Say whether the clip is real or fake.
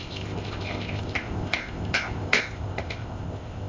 fake